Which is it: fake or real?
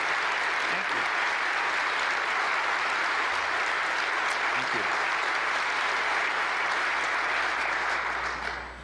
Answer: real